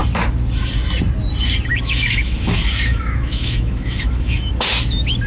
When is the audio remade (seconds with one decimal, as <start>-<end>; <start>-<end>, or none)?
1.7-4.5